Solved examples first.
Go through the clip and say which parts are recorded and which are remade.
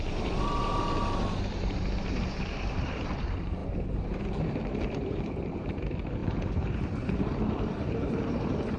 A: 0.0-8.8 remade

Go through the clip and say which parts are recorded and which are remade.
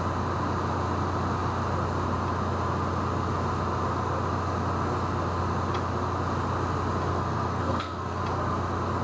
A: 0.0-7.1 recorded; 7.1-8.2 remade; 8.2-9.0 recorded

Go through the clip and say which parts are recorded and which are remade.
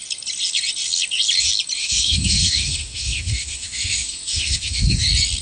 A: 0.0-1.8 recorded; 1.8-5.0 remade; 5.0-5.4 recorded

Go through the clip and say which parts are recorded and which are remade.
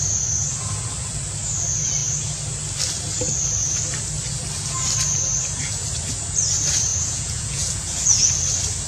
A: 0.0-6.9 recorded; 6.9-8.3 remade; 8.3-8.9 recorded